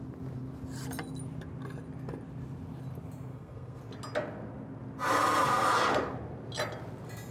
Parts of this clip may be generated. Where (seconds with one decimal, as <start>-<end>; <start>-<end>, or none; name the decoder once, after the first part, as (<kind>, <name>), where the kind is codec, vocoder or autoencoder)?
3.3-3.8 (codec, SNAC)